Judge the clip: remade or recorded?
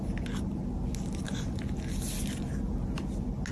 recorded